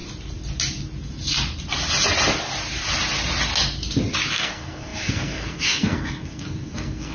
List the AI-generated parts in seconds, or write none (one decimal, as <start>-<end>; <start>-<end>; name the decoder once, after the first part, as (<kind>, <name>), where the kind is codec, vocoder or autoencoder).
4.3-7.1 (codec, SNAC)